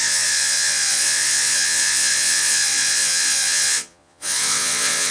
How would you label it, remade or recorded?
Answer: remade